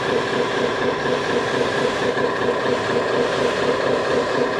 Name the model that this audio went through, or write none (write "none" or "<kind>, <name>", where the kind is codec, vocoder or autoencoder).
vocoder, BigVGAN v2